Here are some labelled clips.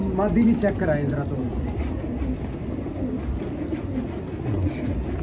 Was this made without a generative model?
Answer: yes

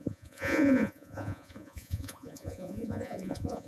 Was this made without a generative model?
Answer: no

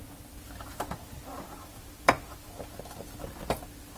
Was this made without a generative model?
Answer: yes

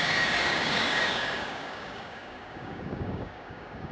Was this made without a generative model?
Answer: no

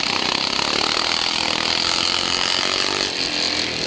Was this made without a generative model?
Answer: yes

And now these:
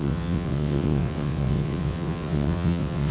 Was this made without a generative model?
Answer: no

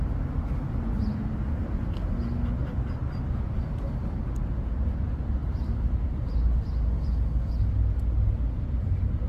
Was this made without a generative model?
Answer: yes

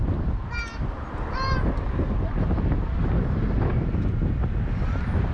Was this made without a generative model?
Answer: yes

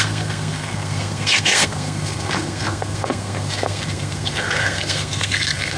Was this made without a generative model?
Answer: no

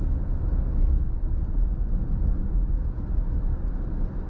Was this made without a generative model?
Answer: yes